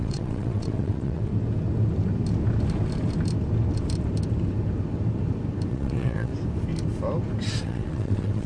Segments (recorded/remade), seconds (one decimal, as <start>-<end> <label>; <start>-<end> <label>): 0.0-1.3 remade; 1.3-5.7 recorded; 5.7-6.3 remade; 6.3-7.6 recorded; 7.6-8.5 remade